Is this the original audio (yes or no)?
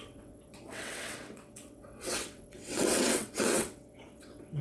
no